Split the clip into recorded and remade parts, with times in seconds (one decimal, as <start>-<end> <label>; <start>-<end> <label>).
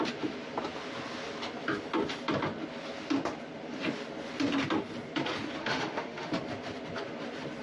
0.0-5.6 recorded; 5.6-6.3 remade; 6.3-7.6 recorded